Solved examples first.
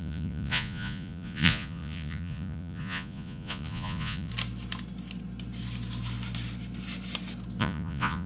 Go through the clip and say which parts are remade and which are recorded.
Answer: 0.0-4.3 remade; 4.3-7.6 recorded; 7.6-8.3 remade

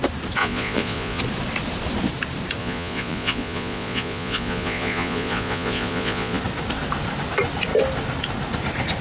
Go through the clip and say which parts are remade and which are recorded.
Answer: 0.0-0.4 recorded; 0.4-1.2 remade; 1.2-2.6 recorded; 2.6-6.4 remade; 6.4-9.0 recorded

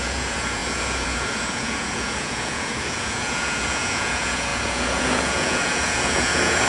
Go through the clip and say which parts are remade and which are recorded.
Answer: 0.0-6.7 remade